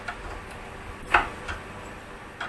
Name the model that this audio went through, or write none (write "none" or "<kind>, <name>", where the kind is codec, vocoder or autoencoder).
none